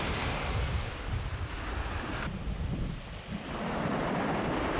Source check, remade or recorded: remade